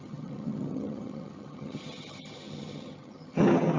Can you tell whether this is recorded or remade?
remade